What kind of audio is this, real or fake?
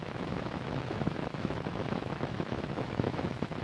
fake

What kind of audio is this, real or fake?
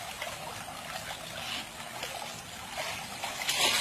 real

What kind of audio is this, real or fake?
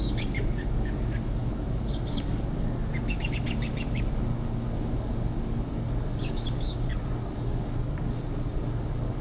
fake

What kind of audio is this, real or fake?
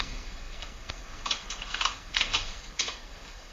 fake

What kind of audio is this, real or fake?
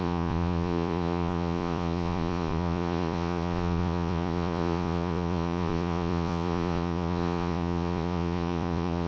fake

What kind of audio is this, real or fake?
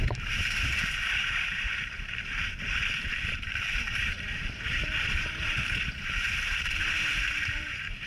fake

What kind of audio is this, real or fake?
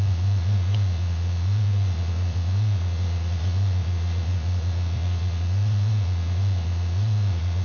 fake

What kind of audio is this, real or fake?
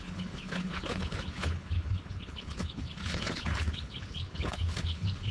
fake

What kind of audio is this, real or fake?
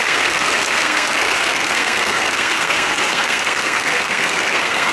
fake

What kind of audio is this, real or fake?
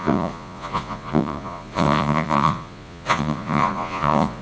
fake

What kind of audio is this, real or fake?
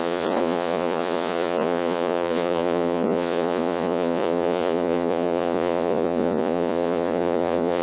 fake